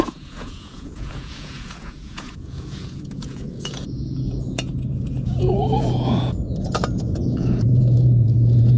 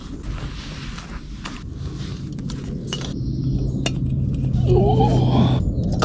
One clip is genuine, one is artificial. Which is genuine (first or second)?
second